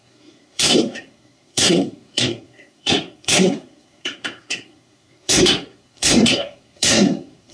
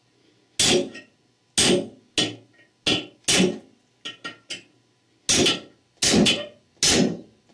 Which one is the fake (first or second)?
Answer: first